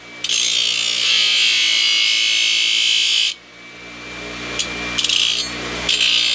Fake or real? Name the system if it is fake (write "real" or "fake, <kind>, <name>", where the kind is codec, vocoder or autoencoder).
real